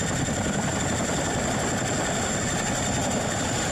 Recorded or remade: recorded